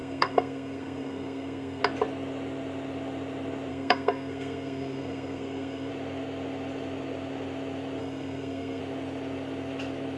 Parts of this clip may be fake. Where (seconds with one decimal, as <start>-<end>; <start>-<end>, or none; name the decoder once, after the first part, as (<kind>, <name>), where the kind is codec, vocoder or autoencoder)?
0.0-1.8 (codec, SNAC); 3.7-5.9; 8.0-8.8